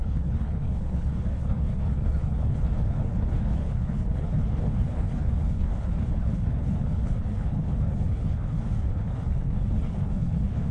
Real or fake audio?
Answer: fake